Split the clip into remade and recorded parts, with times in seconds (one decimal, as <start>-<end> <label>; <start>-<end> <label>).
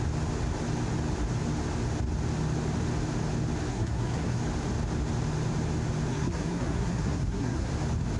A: 0.0-3.7 recorded; 3.7-4.4 remade; 4.4-6.1 recorded; 6.1-7.7 remade; 7.7-8.2 recorded